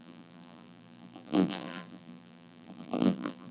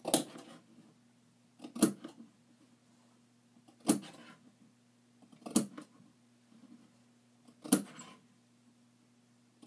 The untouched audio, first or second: second